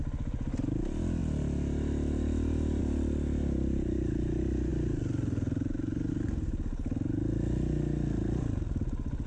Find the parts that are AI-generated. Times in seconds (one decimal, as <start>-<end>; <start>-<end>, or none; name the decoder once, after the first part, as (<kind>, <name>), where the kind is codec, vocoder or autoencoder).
none